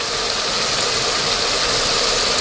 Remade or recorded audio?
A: recorded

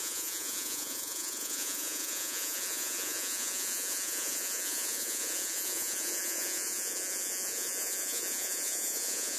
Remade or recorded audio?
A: remade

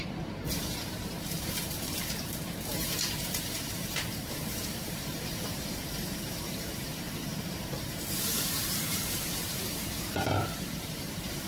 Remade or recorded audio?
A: remade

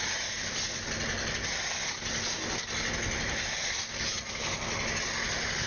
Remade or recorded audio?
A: recorded